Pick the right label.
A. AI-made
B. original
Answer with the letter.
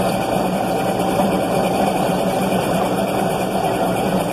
A